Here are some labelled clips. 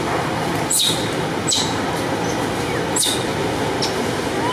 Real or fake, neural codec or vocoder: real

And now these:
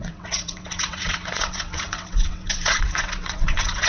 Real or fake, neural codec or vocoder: fake, vocoder, WaveNeXt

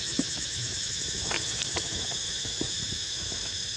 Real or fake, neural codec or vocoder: fake, autoencoder, DAC-VAE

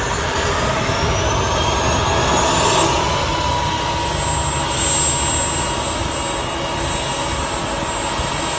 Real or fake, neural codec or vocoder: real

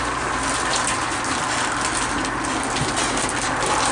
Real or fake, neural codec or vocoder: real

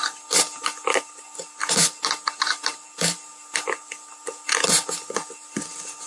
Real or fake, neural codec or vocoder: real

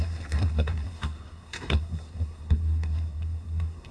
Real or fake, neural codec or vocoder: fake, codec, SNAC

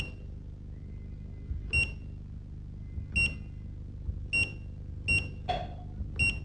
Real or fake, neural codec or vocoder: real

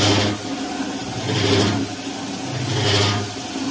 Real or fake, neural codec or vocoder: real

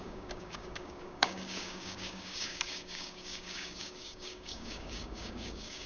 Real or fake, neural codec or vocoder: fake, codec, DAC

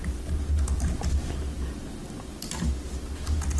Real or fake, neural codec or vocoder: real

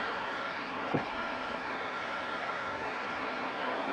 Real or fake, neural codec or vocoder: fake, codec, SNAC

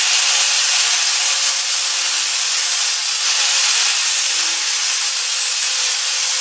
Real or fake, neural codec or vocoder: real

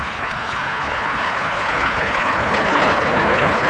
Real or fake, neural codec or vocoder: fake, codec, HILCodec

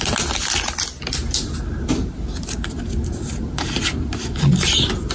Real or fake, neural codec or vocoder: real